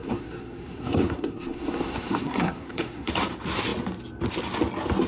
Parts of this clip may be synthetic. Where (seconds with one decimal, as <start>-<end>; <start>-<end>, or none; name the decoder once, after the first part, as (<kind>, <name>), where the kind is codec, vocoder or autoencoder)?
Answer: 0.0-3.1 (codec, SNAC)